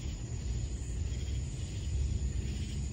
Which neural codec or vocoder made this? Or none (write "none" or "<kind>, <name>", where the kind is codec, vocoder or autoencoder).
none